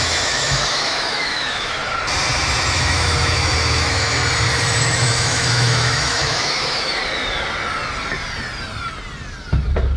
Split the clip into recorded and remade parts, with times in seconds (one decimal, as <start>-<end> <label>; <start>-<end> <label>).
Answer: 0.0-1.8 remade; 1.8-2.7 recorded; 2.7-4.2 remade; 4.2-4.8 recorded; 4.8-7.0 remade; 7.0-10.0 recorded